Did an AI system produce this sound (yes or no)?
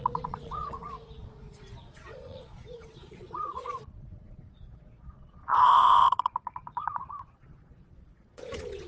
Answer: yes